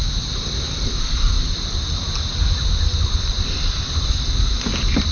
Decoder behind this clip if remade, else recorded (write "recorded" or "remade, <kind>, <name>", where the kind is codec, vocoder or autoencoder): recorded